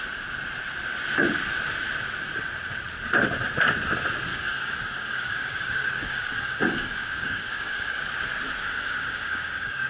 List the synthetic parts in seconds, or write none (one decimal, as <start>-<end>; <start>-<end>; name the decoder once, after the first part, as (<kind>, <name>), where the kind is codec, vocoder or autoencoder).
4.3-8.0 (codec, DAC); 8.6-9.9